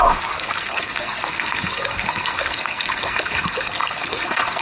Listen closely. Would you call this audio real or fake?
fake